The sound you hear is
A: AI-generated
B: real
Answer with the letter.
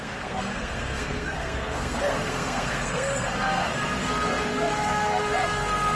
A